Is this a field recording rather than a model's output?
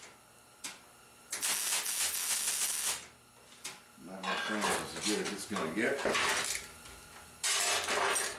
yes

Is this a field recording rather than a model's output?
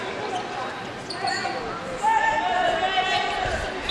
yes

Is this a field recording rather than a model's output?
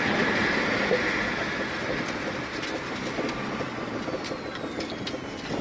yes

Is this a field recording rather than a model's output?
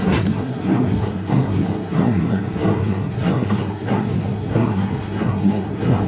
no